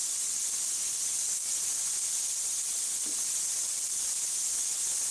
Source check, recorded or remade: recorded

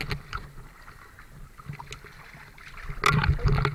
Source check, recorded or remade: recorded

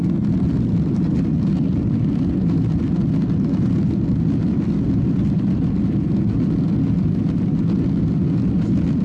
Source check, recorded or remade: recorded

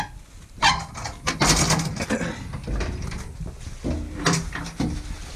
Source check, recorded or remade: recorded